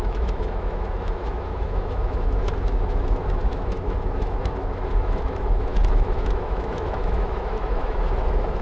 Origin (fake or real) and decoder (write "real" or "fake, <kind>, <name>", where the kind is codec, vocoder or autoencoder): fake, autoencoder, DAC-VAE